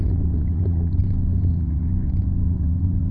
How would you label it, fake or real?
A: fake